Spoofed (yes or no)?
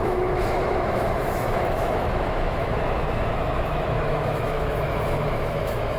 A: yes